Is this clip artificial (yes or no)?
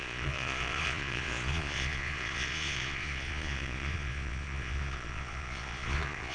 yes